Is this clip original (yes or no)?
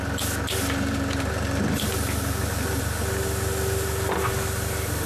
yes